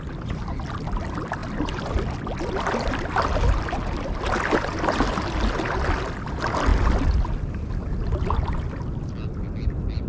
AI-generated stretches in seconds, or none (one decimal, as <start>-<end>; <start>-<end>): none